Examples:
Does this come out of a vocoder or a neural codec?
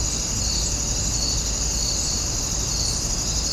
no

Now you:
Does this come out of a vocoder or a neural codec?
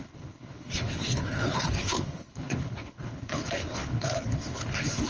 yes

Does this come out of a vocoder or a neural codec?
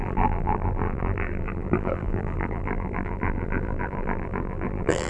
yes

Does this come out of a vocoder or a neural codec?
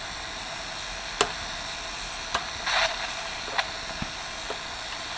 no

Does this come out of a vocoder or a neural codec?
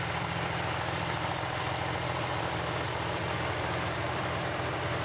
yes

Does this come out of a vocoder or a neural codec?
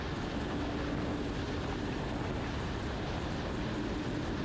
no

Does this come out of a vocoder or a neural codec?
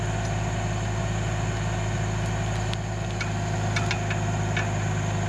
no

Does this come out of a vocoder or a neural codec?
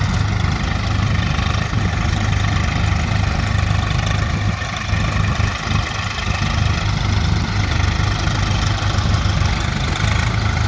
no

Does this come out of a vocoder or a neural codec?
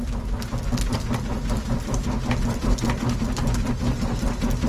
no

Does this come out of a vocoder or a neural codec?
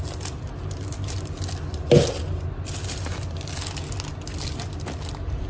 no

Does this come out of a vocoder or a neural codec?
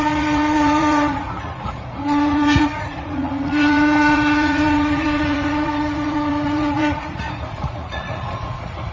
yes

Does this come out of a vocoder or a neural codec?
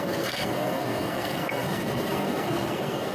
yes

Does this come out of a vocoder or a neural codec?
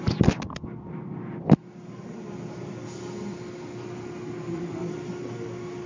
no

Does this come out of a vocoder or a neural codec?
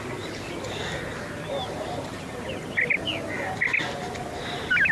no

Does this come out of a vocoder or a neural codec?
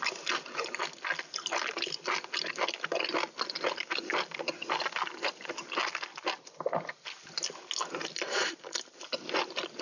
no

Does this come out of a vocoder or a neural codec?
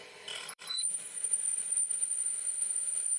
yes